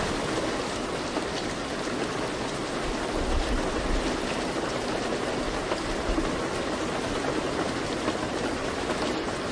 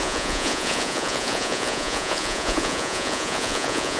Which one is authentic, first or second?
first